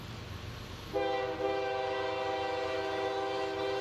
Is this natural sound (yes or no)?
yes